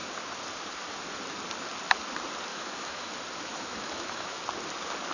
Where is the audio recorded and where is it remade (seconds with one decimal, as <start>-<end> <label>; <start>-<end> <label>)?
0.0-2.5 recorded; 2.5-3.1 remade; 3.1-3.5 recorded; 3.5-4.4 remade; 4.4-5.1 recorded